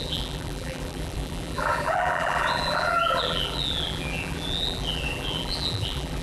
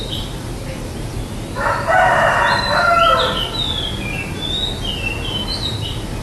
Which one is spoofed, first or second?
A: first